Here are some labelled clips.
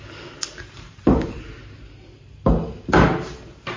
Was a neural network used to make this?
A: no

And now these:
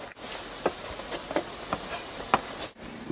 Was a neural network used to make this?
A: no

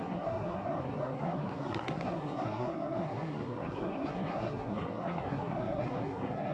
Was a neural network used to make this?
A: yes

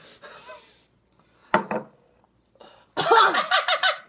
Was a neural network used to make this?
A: no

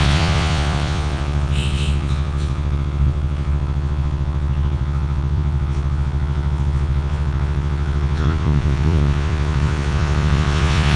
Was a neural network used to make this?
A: yes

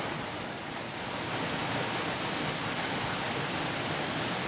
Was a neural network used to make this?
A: no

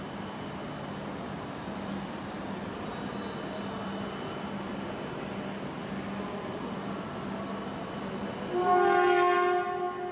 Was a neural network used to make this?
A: no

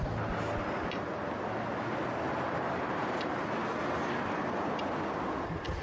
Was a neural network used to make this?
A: no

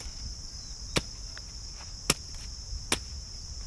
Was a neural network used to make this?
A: no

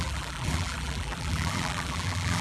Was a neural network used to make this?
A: yes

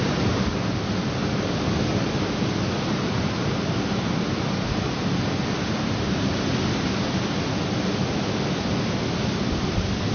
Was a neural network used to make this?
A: no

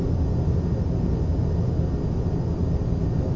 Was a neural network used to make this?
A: no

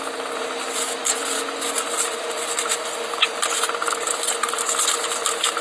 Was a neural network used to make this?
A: no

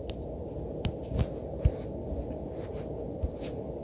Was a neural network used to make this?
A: no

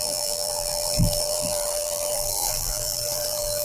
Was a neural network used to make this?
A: yes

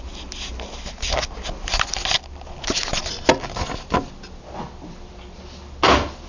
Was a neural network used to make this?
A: no